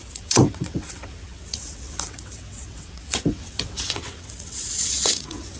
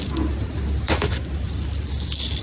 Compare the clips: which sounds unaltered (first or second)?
second